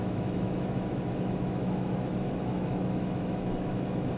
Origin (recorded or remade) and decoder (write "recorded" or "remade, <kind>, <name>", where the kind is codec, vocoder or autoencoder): remade, autoencoder, DAC-VAE